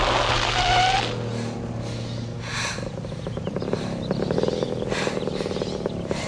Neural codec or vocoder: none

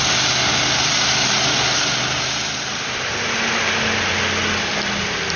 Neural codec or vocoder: none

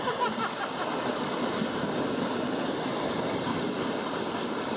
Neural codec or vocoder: none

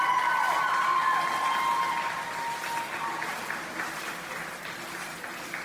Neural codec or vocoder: none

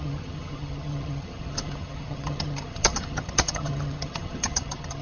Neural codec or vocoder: vocoder, HiFi-GAN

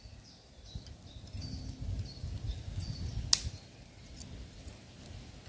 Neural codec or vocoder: none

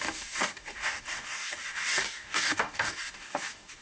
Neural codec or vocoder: codec, DAC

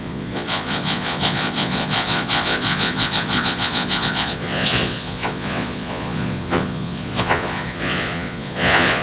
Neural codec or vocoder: vocoder, Vocos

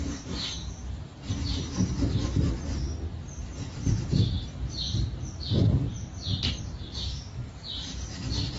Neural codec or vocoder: none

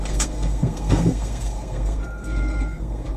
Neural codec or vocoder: codec, SNAC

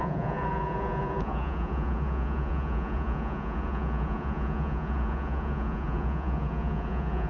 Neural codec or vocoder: vocoder, Vocos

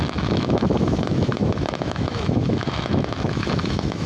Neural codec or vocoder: autoencoder, DAC-VAE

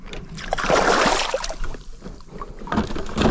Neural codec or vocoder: none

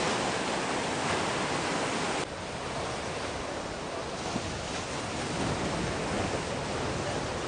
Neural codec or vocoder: none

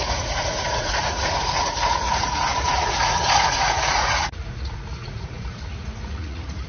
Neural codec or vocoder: vocoder, Vocos